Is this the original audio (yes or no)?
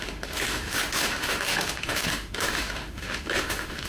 no